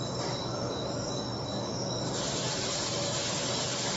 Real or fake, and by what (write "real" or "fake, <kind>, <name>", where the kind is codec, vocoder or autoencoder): fake, vocoder, BigVGAN v2